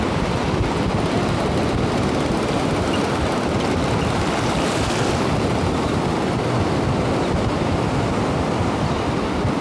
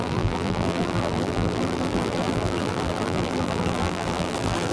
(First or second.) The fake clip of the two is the second